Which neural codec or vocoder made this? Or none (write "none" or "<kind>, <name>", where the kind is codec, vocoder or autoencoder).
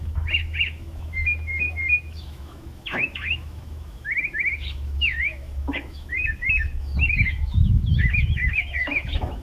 autoencoder, DAC-VAE